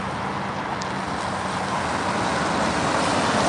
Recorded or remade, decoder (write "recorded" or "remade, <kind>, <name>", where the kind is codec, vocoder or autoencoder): recorded